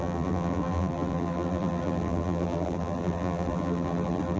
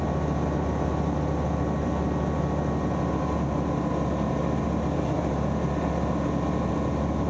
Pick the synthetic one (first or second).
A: first